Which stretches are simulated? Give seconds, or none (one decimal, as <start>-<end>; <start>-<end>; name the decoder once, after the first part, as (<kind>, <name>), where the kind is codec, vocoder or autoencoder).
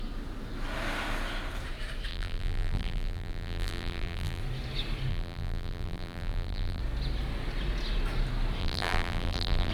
2.1-4.4 (vocoder, BigVGAN v2); 5.1-6.8; 8.6-9.7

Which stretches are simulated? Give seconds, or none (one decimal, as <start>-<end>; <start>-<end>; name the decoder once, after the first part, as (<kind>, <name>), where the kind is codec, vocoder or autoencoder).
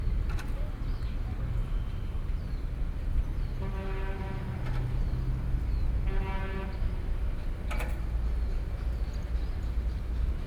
1.6-3.2 (vocoder, BigVGAN v2)